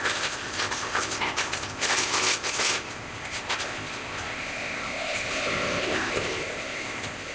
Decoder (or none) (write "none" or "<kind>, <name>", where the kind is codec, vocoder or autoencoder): codec, ZipCodec